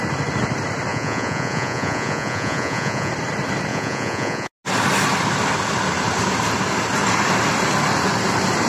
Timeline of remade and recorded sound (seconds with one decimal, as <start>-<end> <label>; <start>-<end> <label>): 0.0-0.9 recorded; 0.9-3.1 remade; 3.1-3.7 recorded; 3.7-4.5 remade; 4.5-8.7 recorded